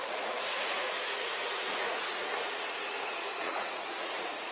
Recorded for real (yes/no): no